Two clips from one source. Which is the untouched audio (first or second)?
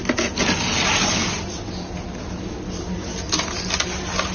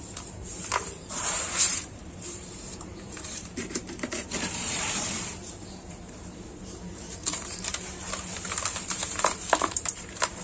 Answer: first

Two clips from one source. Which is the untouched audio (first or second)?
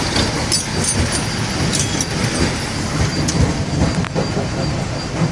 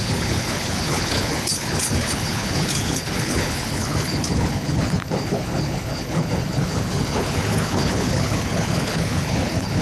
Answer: first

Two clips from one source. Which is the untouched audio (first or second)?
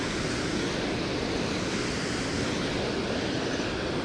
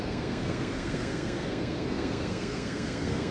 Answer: first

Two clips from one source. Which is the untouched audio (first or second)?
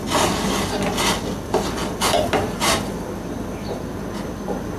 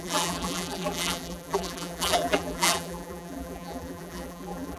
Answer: first